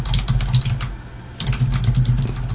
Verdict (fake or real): real